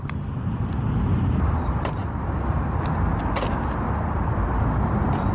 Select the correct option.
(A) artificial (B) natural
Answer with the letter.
B